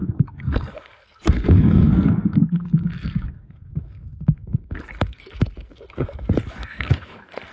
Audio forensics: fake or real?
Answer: fake